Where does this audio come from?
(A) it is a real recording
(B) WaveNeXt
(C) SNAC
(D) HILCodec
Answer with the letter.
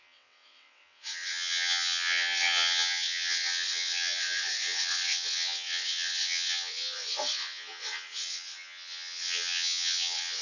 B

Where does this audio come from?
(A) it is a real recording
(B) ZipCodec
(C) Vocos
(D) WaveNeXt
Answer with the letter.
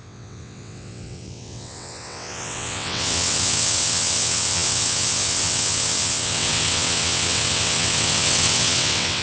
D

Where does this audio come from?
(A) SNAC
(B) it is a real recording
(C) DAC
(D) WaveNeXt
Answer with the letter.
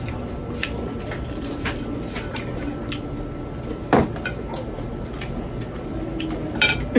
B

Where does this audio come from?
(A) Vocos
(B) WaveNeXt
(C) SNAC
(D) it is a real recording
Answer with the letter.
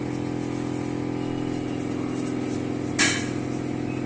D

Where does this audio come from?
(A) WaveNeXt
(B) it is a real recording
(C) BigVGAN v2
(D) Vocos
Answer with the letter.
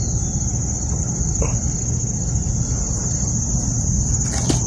B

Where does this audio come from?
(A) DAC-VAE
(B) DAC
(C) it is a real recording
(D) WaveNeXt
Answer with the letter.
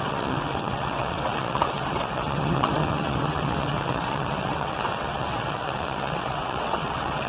D